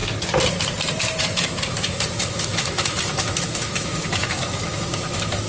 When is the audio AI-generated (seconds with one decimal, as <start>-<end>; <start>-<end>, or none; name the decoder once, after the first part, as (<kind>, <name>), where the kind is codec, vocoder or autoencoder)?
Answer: 1.2-5.5 (autoencoder, DAC-VAE)